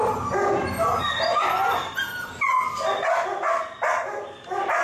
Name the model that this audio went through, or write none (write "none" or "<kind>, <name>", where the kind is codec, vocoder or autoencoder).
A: none